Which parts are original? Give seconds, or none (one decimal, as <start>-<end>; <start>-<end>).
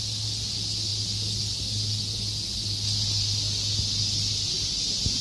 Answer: 0.0-5.2